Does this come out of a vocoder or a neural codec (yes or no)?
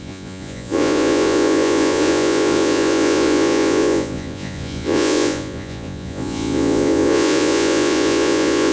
yes